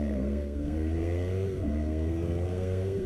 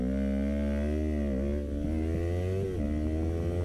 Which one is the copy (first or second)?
first